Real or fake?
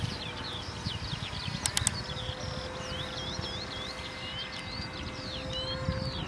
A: real